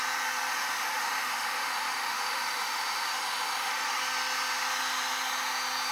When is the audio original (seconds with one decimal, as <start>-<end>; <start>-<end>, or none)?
0.0-0.5; 4.0-5.9